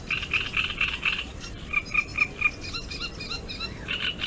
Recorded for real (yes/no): yes